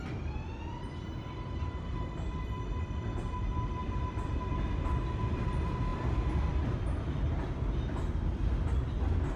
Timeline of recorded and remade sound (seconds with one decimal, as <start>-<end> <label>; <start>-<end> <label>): 0.0-5.9 recorded; 5.9-7.1 remade; 7.1-9.4 recorded

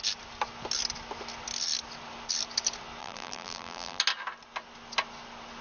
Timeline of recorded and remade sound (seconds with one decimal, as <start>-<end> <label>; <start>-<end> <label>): 0.0-3.0 recorded; 3.0-4.0 remade; 4.0-5.6 recorded

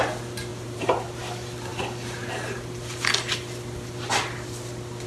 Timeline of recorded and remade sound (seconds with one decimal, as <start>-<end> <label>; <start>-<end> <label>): 0.0-0.5 recorded; 0.5-1.2 remade; 1.2-5.1 recorded

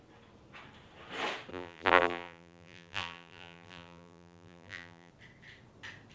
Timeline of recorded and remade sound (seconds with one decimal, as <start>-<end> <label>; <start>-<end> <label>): 0.0-1.5 recorded; 1.5-5.1 remade; 5.1-6.1 recorded

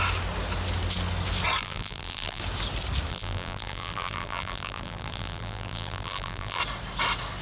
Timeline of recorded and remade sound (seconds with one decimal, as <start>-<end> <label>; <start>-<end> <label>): 0.0-1.6 recorded; 1.6-2.4 remade; 2.4-3.1 recorded; 3.1-6.6 remade; 6.6-7.4 recorded

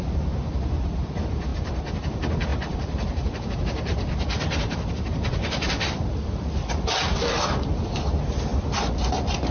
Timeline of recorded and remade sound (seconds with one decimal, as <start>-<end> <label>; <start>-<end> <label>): 0.0-2.5 recorded; 2.5-6.6 remade; 6.6-9.5 recorded